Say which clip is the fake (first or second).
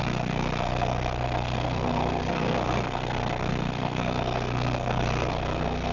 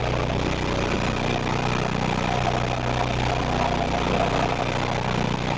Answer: first